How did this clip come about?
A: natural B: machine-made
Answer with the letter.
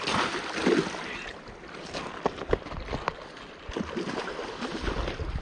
A